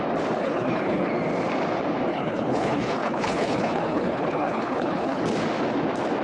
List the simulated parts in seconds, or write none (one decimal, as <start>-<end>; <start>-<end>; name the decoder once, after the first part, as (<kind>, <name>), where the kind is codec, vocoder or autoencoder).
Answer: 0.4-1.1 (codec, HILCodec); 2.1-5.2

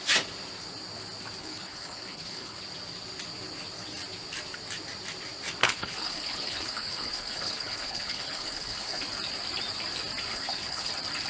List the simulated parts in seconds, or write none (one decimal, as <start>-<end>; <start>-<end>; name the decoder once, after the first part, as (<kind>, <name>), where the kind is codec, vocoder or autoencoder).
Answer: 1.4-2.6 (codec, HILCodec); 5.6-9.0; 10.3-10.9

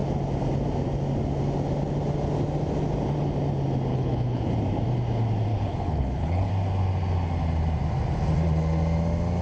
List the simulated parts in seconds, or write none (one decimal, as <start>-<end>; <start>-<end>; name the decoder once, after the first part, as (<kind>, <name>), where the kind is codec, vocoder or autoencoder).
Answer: 3.9-4.5 (codec, HILCodec); 5.5-6.5

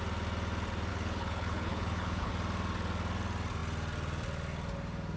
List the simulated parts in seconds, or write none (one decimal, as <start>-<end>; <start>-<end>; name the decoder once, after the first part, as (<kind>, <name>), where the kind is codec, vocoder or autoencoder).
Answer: 0.9-2.3 (codec, HILCodec)

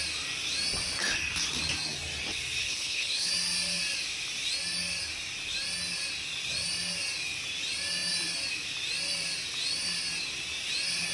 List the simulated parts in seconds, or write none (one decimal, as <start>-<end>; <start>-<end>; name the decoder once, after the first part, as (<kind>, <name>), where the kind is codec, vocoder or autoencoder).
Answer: 2.6-3.3 (codec, HILCodec)

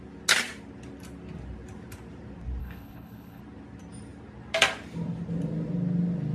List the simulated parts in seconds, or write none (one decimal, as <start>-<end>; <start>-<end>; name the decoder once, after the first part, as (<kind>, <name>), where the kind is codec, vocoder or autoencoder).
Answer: 2.6-3.4 (codec, HILCodec)